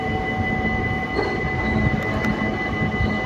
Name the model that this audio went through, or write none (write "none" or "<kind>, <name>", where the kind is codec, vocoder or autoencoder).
none